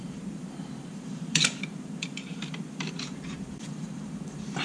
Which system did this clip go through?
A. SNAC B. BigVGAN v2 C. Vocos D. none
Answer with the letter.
B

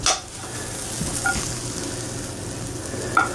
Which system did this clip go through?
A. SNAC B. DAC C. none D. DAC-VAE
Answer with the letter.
C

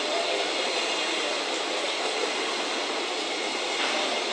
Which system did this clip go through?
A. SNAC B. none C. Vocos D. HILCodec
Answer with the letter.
B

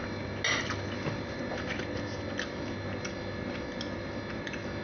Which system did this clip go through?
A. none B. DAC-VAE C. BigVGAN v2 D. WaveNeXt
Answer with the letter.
A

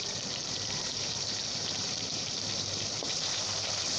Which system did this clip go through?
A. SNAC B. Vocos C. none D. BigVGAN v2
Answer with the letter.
D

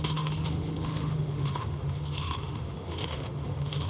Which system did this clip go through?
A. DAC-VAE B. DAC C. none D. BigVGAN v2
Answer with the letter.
A